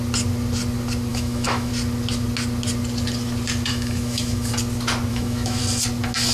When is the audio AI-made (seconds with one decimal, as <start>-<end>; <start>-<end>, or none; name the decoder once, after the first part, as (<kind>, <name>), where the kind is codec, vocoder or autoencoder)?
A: 1.1-1.7 (autoencoder, DAC-VAE); 3.7-4.5; 5.1-5.6